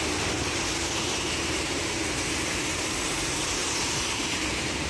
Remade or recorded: remade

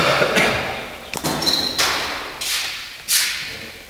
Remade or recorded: recorded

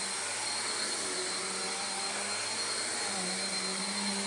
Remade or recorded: recorded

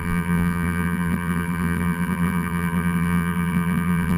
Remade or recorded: remade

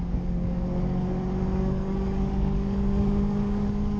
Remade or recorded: remade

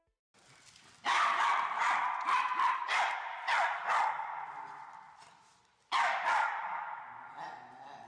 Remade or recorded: recorded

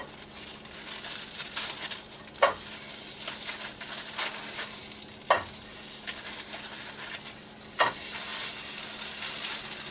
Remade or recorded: recorded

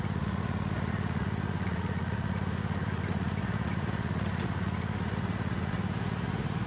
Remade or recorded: remade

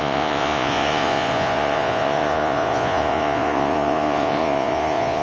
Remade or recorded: remade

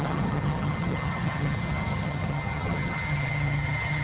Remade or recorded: remade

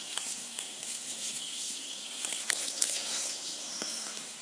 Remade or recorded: remade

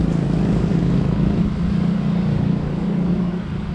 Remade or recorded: remade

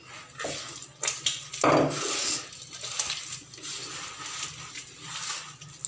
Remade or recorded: recorded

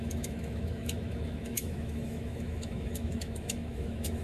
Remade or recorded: remade